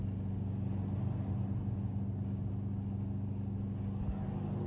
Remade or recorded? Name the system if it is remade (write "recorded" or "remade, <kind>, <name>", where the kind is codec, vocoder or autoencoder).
recorded